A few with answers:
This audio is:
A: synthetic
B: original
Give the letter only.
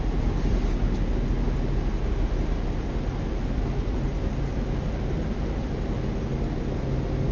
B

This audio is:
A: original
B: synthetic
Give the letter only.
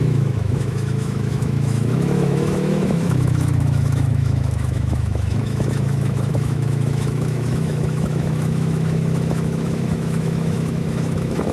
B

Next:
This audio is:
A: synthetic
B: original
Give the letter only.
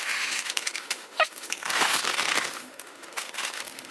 A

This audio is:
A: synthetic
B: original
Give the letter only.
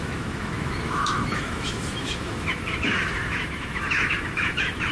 A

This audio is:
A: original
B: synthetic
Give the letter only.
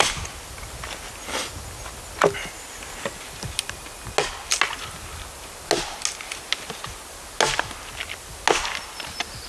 A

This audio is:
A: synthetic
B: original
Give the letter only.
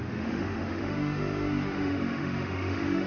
A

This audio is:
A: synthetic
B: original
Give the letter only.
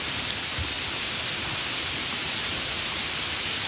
B